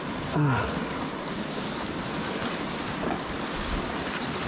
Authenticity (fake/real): real